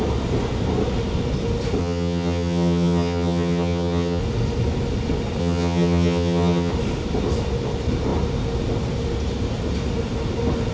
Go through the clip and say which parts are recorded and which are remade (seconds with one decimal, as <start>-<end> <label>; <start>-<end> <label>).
0.0-1.8 recorded; 1.8-4.2 remade; 4.2-5.4 recorded; 5.4-6.7 remade; 6.7-10.7 recorded